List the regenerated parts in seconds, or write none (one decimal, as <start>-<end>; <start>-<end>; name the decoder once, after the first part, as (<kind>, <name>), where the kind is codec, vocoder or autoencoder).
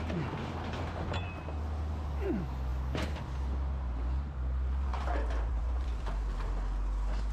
4.9-6.5 (vocoder, BigVGAN v2)